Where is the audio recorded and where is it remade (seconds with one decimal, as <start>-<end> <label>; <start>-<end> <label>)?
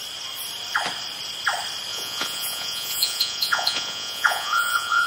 0.0-1.9 recorded; 1.9-5.1 remade